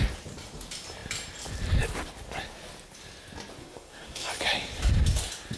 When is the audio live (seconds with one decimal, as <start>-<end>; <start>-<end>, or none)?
0.0-3.6; 4.3-5.6